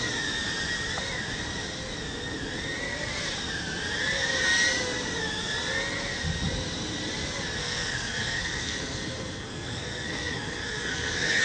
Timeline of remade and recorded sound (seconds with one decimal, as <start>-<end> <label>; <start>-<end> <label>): 0.0-7.6 recorded; 7.6-11.4 remade

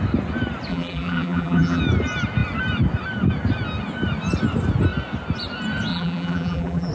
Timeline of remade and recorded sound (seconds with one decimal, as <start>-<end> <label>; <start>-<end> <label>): 0.0-0.7 recorded; 0.7-1.8 remade; 1.8-5.9 recorded; 5.9-6.9 remade

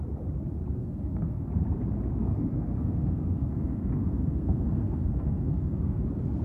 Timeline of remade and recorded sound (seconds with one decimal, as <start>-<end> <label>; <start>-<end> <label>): 0.0-0.8 recorded; 0.8-1.5 remade; 1.5-2.2 recorded; 2.2-6.0 remade; 6.0-6.4 recorded

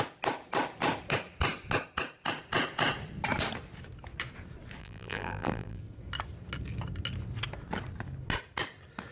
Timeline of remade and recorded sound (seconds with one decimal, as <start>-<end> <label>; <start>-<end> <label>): 0.0-4.8 recorded; 4.8-5.8 remade; 5.8-9.1 recorded

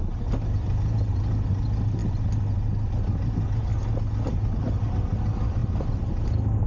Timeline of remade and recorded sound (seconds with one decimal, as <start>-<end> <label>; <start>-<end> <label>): 0.0-6.7 recorded

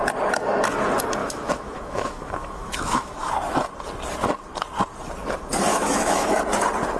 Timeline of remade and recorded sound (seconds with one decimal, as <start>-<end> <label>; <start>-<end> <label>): 0.0-1.2 recorded; 1.2-3.3 remade; 3.3-5.7 recorded; 5.7-6.4 remade; 6.4-7.0 recorded

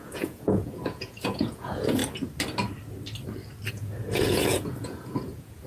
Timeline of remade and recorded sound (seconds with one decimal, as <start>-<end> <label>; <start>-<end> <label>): 0.0-2.0 remade; 2.0-3.7 recorded; 3.7-5.7 remade

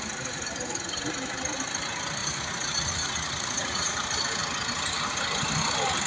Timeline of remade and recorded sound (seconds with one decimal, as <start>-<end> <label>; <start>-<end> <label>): 0.0-2.2 recorded; 2.2-3.9 remade; 3.9-6.1 recorded